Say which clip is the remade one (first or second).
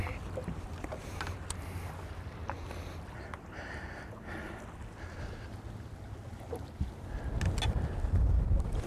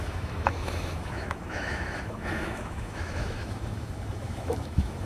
second